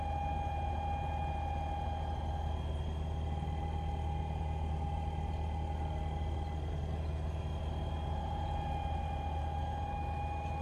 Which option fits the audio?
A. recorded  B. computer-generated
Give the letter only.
A